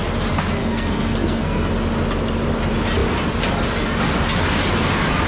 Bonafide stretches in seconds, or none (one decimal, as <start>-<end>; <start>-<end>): 0.0-0.6; 1.7-5.3